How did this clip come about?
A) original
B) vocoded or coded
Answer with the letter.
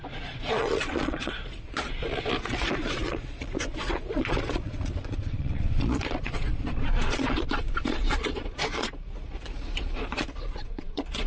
B